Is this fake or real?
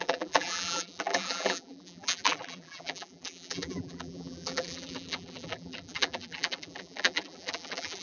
fake